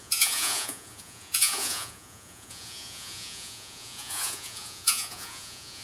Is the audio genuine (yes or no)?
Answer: no